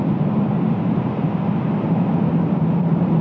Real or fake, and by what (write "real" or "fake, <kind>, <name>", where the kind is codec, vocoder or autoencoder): real